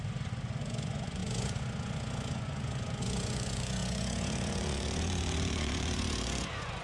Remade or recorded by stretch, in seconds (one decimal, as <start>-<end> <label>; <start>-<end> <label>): 0.0-6.8 remade